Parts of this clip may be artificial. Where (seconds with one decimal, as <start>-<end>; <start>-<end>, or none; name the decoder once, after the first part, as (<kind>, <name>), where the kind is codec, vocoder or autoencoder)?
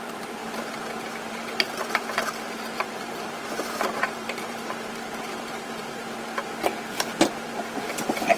0.0-0.4 (vocoder, BigVGAN v2); 1.3-6.0; 7.4-8.4